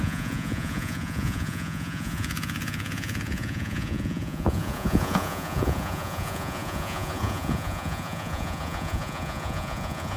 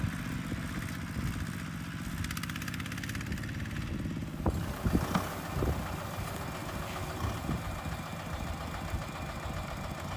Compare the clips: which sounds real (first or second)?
second